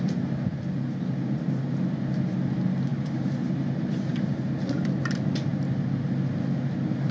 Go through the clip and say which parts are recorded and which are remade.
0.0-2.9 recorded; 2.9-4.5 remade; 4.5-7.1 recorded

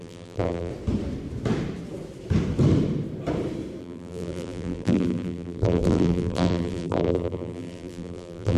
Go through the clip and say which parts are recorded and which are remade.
0.0-0.7 remade; 0.7-3.8 recorded; 3.8-8.6 remade

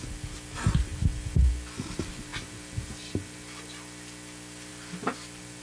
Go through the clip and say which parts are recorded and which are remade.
0.0-5.6 recorded

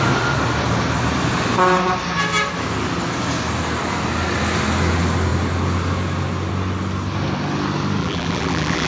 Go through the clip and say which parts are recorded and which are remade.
0.0-8.0 recorded; 8.0-8.9 remade

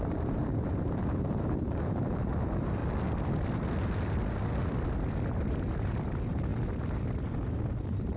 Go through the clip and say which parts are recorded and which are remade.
0.0-2.8 remade; 2.8-5.4 recorded; 5.4-6.5 remade; 6.5-7.7 recorded; 7.7-8.2 remade

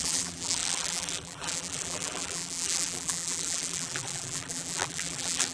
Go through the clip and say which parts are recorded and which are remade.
0.0-5.5 remade

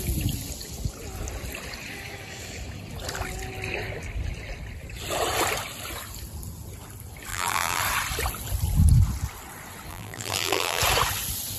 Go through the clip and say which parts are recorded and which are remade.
0.0-7.3 recorded; 7.3-7.8 remade; 7.8-9.9 recorded; 9.9-10.8 remade; 10.8-11.6 recorded